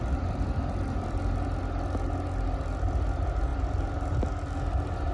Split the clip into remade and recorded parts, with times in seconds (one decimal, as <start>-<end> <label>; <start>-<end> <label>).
0.0-5.1 recorded